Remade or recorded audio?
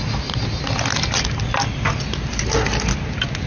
recorded